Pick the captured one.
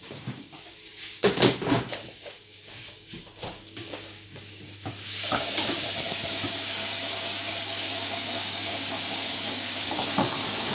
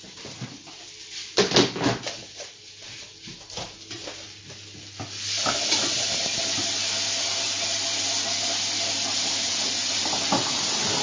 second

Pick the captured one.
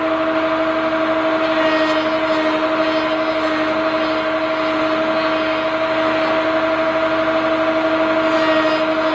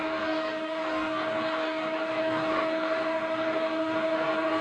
first